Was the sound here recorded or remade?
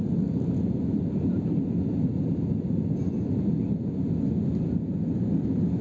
recorded